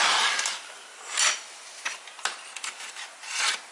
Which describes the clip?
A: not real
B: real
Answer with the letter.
B